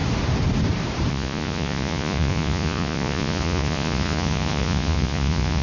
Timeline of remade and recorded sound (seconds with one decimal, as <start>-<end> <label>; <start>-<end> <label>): 0.0-1.1 recorded; 1.1-5.6 remade